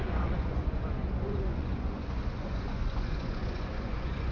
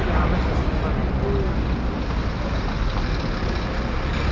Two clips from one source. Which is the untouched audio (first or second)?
second